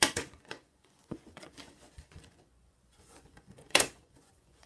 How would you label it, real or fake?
fake